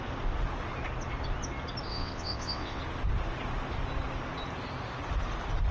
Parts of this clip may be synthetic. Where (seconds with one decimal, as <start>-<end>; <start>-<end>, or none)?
1.9-2.8